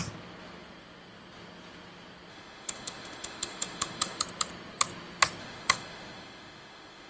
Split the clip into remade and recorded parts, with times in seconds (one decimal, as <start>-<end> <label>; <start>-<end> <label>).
0.0-2.3 recorded; 2.3-4.2 remade; 4.2-5.4 recorded; 5.4-7.1 remade